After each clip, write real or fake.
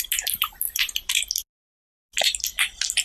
real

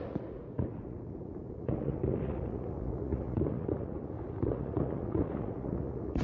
fake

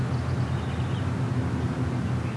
real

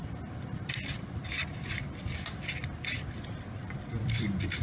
fake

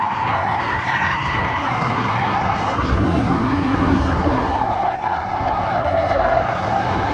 fake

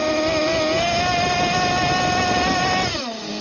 real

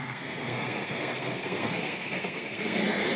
fake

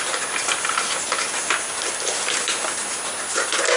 real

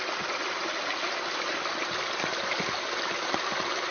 real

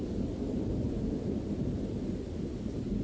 fake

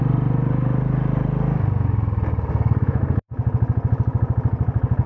real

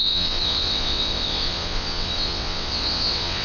fake